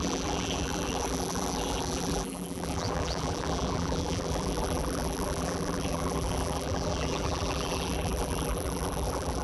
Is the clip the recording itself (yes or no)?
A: no